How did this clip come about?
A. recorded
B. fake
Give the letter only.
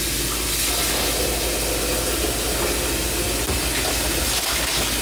A